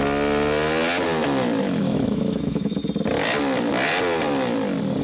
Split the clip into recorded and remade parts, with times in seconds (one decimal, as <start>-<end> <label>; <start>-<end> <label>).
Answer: 0.0-1.6 recorded; 1.6-2.8 remade; 2.8-5.0 recorded